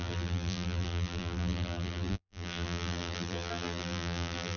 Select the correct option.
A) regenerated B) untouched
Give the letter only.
A